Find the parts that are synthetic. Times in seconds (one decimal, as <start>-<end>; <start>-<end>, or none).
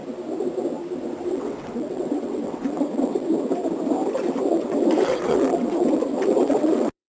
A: 1.3-3.3; 4.5-7.1